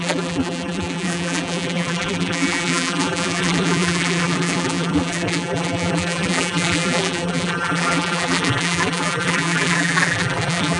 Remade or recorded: remade